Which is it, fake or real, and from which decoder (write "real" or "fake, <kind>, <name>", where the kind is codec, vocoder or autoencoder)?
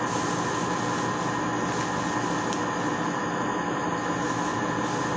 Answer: real